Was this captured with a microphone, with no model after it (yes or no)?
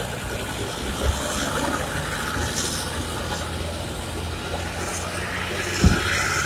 yes